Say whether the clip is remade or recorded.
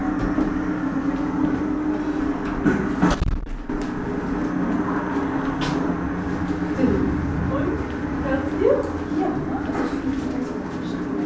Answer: recorded